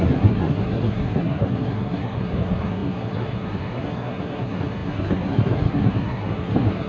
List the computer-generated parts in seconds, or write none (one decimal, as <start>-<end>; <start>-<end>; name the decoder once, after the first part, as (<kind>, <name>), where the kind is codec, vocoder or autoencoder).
0.0-6.9 (codec, SNAC)